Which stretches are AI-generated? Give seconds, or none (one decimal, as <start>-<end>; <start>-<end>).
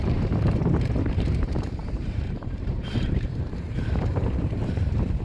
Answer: 0.0-5.2